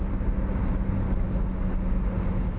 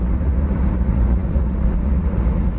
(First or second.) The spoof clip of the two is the second